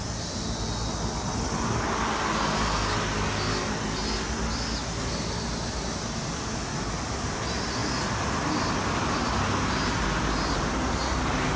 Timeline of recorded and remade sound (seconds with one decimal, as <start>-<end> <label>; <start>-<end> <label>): 0.0-11.6 recorded

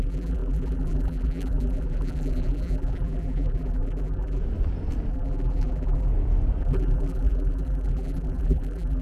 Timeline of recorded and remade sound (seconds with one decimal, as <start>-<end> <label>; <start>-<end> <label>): 0.0-4.4 remade; 4.4-5.1 recorded; 5.1-6.1 remade; 6.1-6.6 recorded; 6.6-9.0 remade

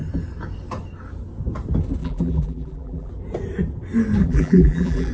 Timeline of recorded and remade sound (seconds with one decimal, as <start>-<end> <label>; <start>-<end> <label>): 0.0-2.0 recorded; 2.0-3.1 remade; 3.1-4.2 recorded; 4.2-5.1 remade

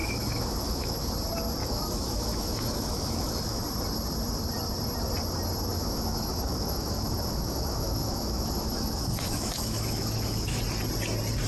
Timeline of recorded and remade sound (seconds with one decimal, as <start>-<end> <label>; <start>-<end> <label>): 0.0-1.1 remade; 1.1-1.6 recorded; 1.6-3.6 remade; 3.6-5.7 recorded; 5.7-10.6 remade; 10.6-11.5 recorded

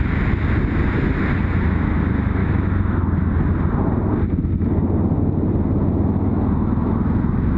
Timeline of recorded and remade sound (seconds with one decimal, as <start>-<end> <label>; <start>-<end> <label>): 0.0-2.4 recorded; 2.4-3.0 remade; 3.0-6.1 recorded; 6.1-6.9 remade; 6.9-7.6 recorded

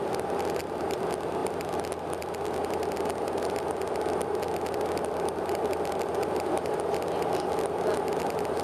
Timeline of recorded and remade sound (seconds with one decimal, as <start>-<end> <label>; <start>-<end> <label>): 0.0-8.6 recorded

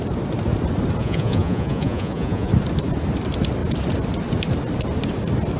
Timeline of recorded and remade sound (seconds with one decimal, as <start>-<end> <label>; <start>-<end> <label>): 0.0-1.0 recorded; 1.0-2.5 remade; 2.5-5.6 recorded